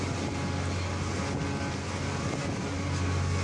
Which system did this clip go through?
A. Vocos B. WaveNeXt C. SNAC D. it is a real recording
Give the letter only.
D